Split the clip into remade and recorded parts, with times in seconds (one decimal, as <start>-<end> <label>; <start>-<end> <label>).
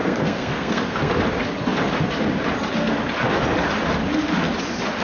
0.0-1.1 remade; 1.1-5.0 recorded